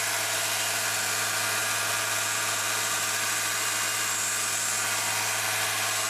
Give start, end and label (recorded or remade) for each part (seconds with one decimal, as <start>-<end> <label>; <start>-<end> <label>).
0.0-6.1 recorded

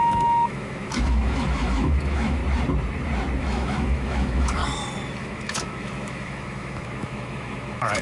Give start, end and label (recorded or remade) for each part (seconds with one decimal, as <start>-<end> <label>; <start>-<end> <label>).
0.0-2.4 remade; 2.4-3.4 recorded; 3.4-4.6 remade; 4.6-5.2 recorded; 5.2-8.0 remade

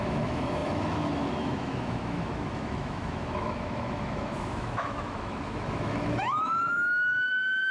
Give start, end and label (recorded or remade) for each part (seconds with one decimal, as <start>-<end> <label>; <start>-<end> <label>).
0.0-7.7 remade

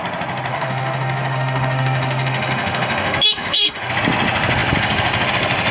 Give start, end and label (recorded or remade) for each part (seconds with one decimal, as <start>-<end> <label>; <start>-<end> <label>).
0.0-0.5 recorded; 0.5-3.9 remade; 3.9-5.7 recorded

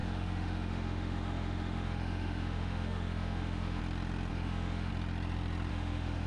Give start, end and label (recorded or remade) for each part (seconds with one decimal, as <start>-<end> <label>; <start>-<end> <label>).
0.0-3.8 remade; 3.8-4.3 recorded; 4.3-4.9 remade; 4.9-5.7 recorded; 5.7-6.3 remade

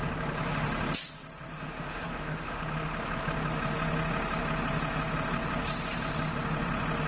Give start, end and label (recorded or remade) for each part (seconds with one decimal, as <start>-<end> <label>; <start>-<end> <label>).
0.0-1.5 recorded; 1.5-2.6 remade; 2.6-7.1 recorded

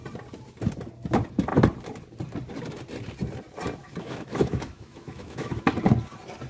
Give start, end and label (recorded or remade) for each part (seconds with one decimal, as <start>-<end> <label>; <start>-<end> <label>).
0.0-3.8 recorded; 3.8-5.6 remade; 5.6-6.5 recorded

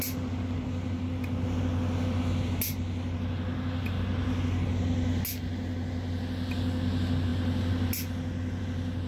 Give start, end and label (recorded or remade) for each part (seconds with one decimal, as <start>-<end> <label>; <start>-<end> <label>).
0.0-9.1 recorded